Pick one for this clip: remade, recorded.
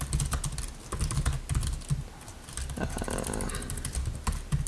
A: recorded